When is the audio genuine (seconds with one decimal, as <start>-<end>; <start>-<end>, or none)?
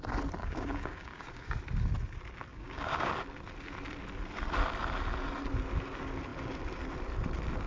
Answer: 0.0-0.4; 1.6-2.5; 3.1-7.7